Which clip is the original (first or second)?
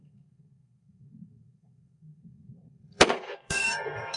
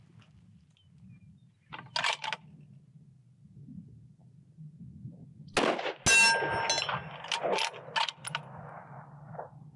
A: second